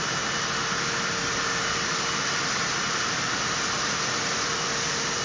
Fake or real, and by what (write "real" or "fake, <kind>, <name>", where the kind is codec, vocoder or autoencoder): fake, vocoder, BigVGAN v2